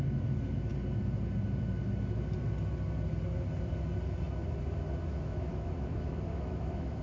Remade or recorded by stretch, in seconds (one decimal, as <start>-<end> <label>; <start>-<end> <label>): 0.0-5.1 recorded; 5.1-7.0 remade